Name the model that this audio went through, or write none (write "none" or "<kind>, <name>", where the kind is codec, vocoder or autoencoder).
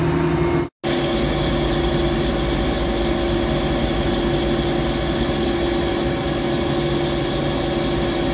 none